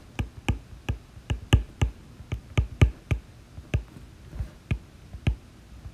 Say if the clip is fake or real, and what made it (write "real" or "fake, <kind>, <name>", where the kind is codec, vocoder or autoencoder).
real